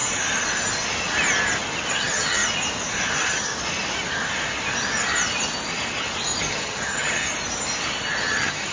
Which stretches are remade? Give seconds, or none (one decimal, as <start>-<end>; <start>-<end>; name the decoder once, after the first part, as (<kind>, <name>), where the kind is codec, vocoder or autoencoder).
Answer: 1.9-2.4 (vocoder, HiFi-GAN); 3.1-3.5; 6.4-7.3; 8.2-8.7